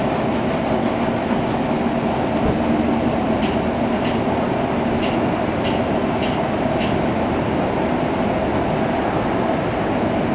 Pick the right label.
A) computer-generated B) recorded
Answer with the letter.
B